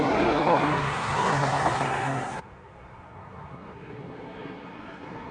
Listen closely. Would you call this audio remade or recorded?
remade